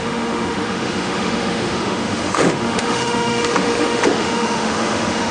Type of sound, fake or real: fake